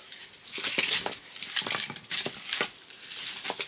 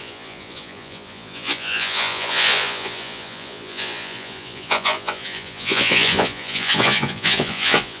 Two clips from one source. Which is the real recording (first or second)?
first